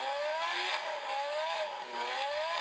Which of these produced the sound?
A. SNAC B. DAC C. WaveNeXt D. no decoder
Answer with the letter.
B